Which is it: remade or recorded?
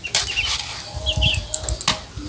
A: recorded